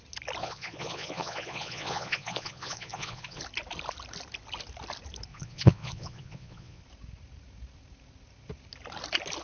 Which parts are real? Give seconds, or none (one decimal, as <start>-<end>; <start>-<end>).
0.0-0.4; 3.4-5.3; 6.8-9.4